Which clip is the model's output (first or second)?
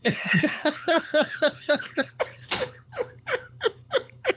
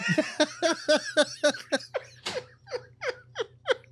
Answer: first